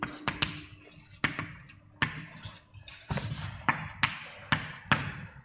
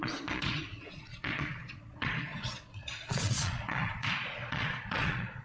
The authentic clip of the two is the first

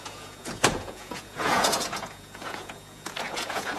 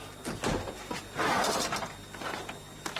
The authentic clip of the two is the second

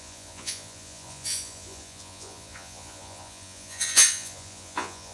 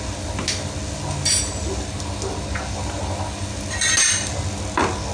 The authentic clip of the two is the second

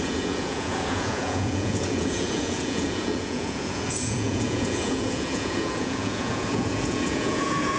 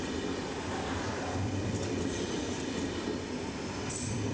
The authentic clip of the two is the second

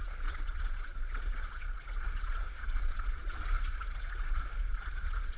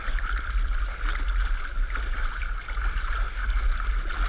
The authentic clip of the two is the second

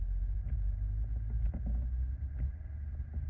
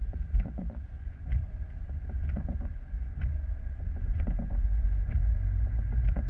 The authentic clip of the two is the first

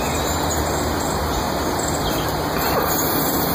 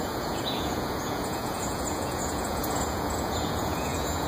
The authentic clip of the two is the first